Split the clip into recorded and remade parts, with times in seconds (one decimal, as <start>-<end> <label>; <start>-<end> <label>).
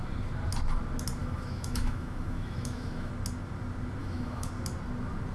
0.0-1.2 recorded; 1.2-3.1 remade; 3.1-4.0 recorded; 4.0-4.5 remade; 4.5-5.3 recorded